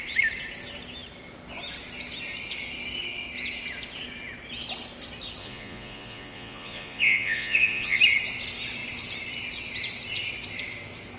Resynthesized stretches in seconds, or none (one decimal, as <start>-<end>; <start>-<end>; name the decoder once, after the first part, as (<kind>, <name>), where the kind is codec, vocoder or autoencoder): 5.4-8.0 (vocoder, Vocos)